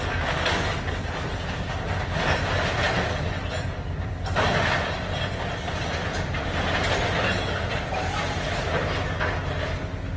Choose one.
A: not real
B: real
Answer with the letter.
B